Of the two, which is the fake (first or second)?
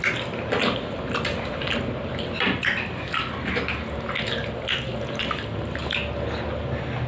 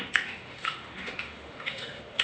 second